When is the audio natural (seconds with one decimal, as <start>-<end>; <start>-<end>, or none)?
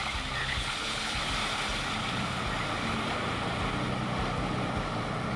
0.0-0.4; 1.2-5.4